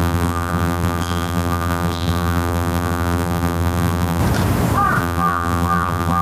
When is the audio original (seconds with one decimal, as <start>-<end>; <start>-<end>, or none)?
4.2-5.0